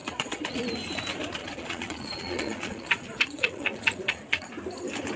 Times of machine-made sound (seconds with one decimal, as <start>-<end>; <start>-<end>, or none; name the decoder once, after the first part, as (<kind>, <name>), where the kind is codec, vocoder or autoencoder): 0.0-0.6 (vocoder, Vocos); 1.4-4.5